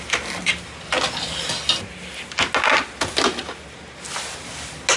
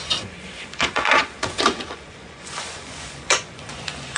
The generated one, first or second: second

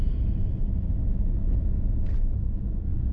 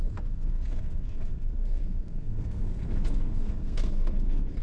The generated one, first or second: second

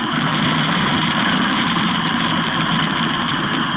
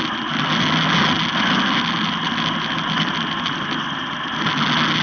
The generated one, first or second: first